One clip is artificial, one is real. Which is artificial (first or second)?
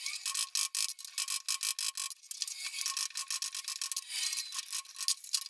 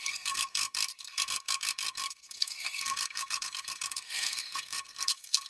second